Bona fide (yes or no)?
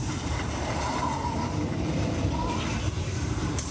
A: no